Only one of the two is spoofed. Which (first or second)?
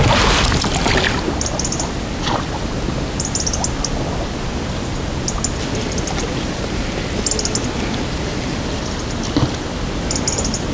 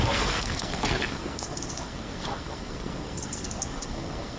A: second